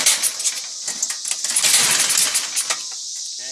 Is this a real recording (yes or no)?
yes